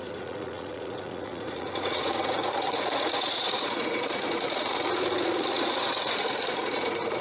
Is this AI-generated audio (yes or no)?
yes